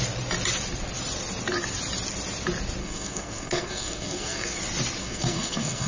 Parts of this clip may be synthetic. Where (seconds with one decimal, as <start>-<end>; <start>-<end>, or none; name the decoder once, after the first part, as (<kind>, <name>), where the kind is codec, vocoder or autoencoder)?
2.8-4.6 (codec, SNAC); 5.0-5.9